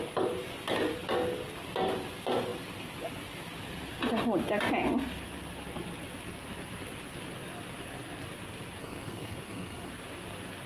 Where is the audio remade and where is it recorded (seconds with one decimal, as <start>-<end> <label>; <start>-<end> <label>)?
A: 0.0-8.8 recorded; 8.8-9.9 remade; 9.9-10.7 recorded